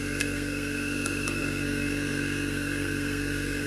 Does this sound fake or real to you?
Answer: fake